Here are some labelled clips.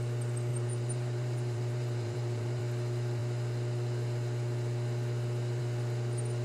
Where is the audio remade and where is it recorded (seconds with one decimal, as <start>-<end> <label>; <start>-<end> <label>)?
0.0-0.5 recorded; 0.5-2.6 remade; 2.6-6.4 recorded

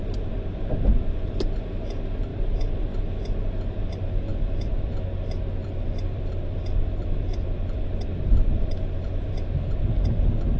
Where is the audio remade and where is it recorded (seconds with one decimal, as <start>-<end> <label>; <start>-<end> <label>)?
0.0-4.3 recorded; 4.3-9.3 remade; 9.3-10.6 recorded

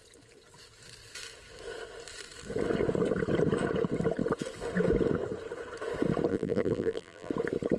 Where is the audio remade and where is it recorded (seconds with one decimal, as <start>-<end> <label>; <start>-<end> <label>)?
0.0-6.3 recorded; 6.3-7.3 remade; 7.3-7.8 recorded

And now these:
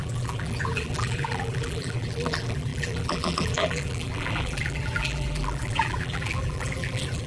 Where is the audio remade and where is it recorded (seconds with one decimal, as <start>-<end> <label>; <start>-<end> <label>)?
0.0-7.3 remade